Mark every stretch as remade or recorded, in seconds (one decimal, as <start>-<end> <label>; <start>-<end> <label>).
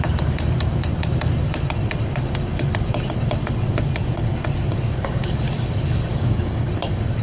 0.0-6.1 recorded; 6.1-6.7 remade; 6.7-7.2 recorded